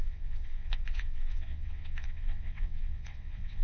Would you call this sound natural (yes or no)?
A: no